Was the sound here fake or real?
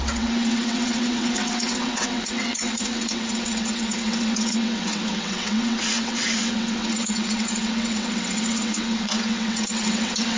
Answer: fake